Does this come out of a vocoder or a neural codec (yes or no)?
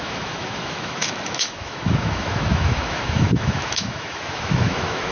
yes